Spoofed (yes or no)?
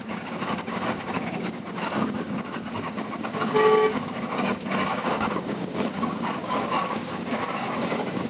yes